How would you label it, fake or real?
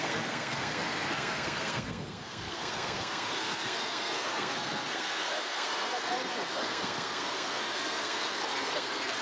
fake